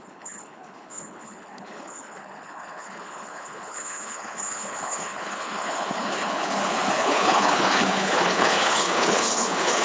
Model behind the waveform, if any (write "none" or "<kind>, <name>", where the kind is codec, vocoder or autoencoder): codec, HILCodec